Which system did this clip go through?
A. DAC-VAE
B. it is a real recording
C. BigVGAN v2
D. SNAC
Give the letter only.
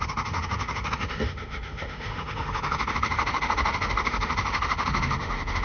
A